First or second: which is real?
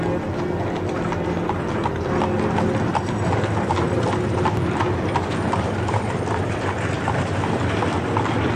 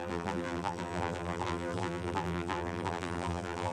first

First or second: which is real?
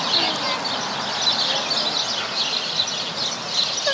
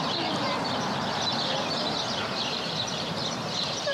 first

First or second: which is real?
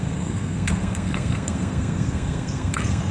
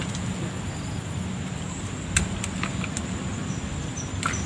second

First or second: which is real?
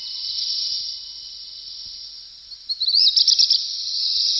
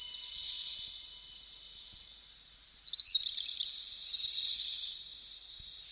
second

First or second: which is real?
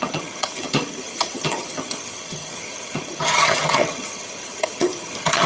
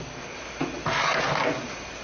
second